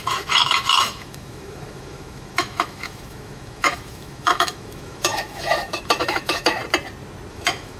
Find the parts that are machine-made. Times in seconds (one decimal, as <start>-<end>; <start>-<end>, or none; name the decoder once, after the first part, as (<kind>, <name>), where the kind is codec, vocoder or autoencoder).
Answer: 0.0-6.6 (autoencoder, DAC-VAE); 7.3-7.8